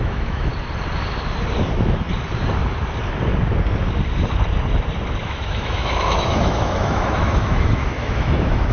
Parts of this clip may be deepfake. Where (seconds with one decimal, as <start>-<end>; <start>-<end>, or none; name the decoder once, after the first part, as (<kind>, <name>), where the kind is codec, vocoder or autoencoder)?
0.0-0.5 (autoencoder, DAC-VAE); 5.2-8.7